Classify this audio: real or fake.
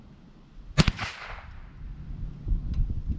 real